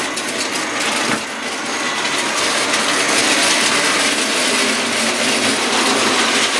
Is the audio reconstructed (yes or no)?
no